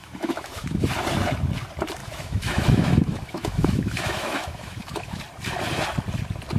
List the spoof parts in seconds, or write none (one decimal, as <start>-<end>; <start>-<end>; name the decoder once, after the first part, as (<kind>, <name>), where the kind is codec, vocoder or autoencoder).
0.0-0.9 (autoencoder, DAC-VAE); 2.0-5.2